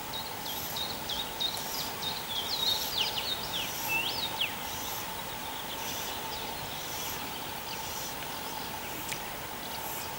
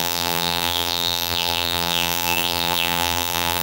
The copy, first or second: second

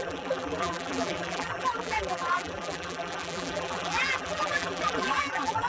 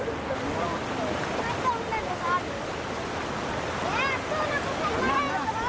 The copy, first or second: first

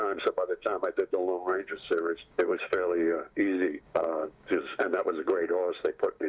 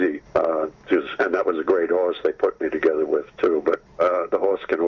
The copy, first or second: first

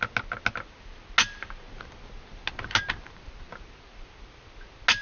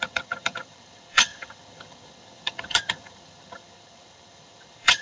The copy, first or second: second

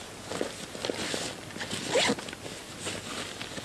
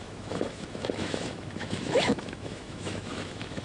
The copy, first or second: second